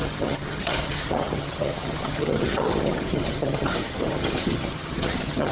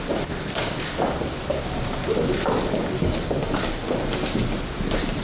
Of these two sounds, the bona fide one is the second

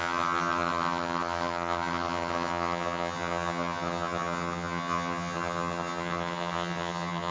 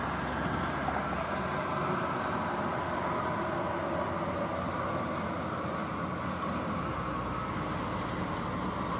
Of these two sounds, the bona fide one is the second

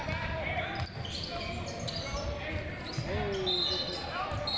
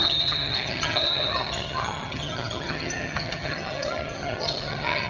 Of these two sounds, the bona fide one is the first